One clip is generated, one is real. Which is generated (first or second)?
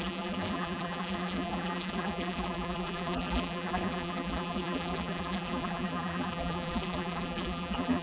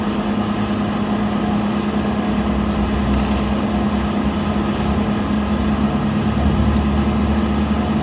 first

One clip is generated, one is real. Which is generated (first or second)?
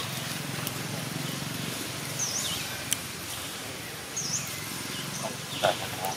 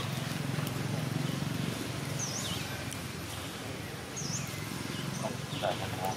first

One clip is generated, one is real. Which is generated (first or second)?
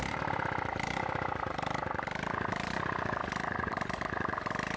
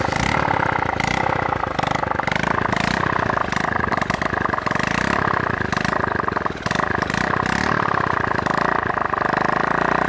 first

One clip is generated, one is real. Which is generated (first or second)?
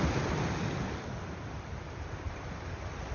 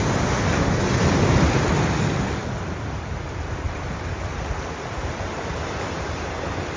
first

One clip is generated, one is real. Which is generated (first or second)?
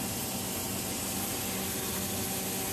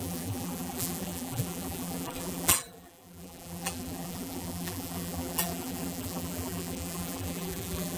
second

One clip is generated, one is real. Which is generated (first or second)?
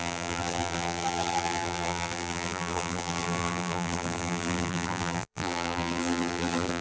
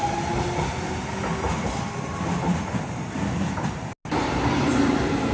first